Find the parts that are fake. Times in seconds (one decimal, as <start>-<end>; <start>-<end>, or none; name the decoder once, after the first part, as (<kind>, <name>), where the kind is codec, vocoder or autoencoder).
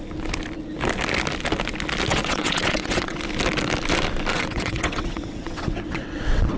2.1-3.2 (vocoder, WaveNeXt); 4.3-6.6